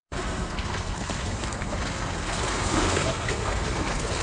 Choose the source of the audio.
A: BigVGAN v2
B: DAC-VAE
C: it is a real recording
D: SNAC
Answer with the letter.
D